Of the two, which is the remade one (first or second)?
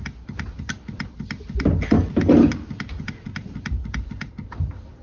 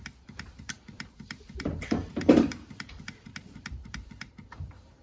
second